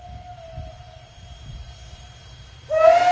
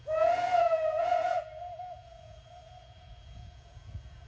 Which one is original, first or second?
first